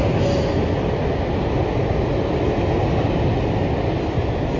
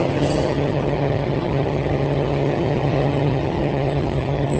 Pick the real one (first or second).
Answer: first